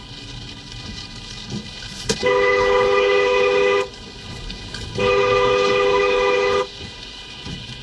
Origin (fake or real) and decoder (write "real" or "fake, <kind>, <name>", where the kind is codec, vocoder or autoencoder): fake, codec, HILCodec